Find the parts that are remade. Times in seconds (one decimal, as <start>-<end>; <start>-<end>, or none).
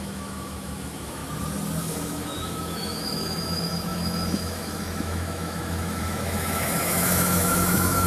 0.0-1.2; 1.8-8.1